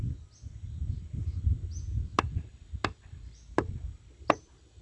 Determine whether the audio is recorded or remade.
recorded